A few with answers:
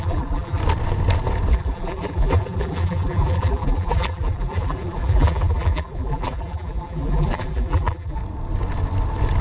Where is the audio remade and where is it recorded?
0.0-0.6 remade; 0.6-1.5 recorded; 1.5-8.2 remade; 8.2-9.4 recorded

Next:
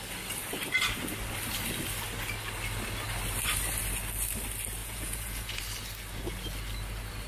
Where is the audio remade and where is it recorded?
0.0-4.8 recorded; 4.8-5.6 remade; 5.6-7.3 recorded